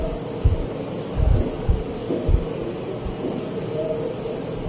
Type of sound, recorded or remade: recorded